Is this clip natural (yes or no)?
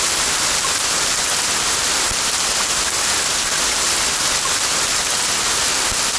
yes